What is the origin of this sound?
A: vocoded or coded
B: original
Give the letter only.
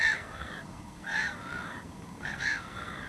A